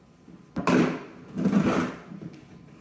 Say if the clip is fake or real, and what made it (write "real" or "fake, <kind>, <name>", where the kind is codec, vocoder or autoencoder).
real